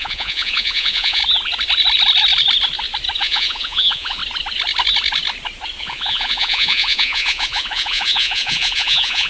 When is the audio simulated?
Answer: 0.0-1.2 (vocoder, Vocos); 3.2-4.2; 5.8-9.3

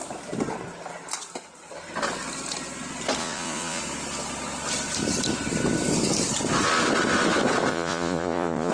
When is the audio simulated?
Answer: 3.2-3.8 (vocoder, Vocos); 7.7-8.7

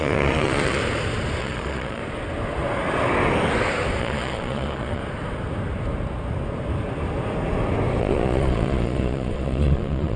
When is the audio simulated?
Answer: 0.0-0.8 (vocoder, Vocos); 1.4-2.0; 4.0-5.0; 8.0-10.2

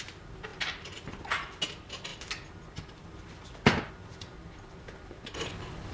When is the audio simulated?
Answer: none

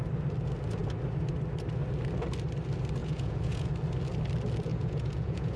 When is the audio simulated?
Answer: 3.0-3.7 (vocoder, Vocos); 4.7-5.6

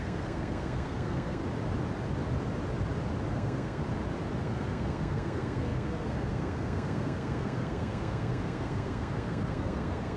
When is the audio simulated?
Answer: 0.0-1.4 (codec, SNAC); 3.3-3.8; 4.4-10.2

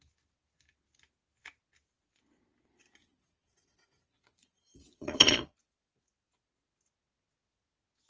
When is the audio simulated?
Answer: 3.0-5.4 (vocoder, Vocos)